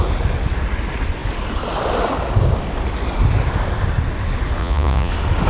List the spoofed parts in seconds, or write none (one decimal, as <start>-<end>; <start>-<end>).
4.6-5.1